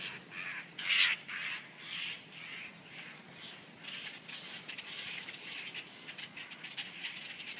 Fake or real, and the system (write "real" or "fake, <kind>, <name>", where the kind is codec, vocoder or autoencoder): real